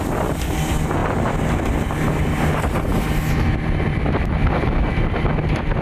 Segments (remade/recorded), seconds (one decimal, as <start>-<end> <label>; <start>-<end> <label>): 0.0-2.9 remade; 2.9-5.8 recorded